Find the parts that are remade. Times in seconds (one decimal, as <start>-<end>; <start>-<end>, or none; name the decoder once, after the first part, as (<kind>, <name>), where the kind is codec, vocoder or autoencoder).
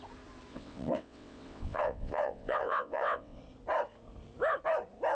0.5-3.4 (vocoder, WaveNeXt)